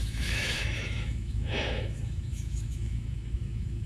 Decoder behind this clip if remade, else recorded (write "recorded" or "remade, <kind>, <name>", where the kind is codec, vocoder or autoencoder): remade, autoencoder, DAC-VAE